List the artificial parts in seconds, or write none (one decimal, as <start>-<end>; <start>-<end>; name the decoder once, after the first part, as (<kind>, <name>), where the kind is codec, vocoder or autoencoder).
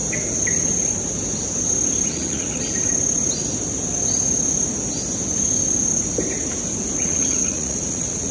2.1-2.6 (vocoder, Vocos); 7.0-8.3